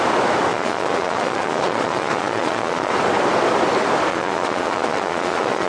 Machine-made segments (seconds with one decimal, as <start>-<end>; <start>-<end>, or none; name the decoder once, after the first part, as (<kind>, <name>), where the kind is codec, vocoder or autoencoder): 0.5-2.9 (vocoder, Vocos); 4.1-5.7

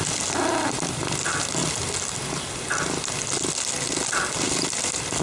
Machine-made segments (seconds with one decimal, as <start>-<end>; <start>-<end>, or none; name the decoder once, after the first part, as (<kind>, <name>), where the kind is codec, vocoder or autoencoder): none

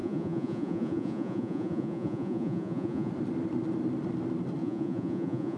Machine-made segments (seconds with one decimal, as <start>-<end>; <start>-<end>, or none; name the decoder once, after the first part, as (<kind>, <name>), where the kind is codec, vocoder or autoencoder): 0.0-3.1 (vocoder, Vocos); 4.6-5.6

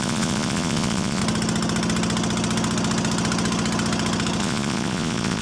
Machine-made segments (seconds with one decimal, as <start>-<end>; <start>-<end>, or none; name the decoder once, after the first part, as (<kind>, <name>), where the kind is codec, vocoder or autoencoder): 0.0-1.2 (vocoder, Vocos); 4.4-5.4